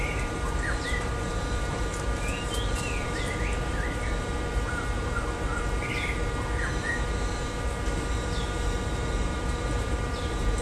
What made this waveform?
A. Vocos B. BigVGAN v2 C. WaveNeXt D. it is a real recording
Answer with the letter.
B